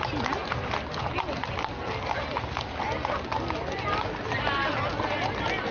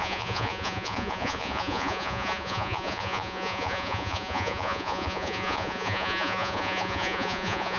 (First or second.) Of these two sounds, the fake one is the second